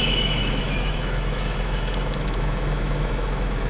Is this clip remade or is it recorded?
remade